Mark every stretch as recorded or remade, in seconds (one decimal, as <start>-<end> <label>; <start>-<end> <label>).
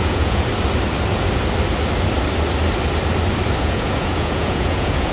0.0-0.5 remade; 0.5-3.6 recorded; 3.6-5.1 remade